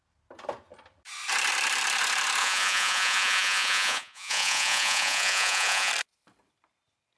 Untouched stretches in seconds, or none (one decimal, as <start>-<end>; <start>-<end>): 0.0-2.4; 5.9-7.2